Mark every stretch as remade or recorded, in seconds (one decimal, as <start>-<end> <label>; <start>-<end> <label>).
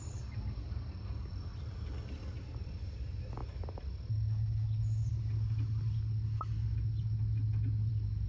0.0-8.3 recorded